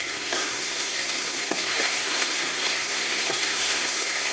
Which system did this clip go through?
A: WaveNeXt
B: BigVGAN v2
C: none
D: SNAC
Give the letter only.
D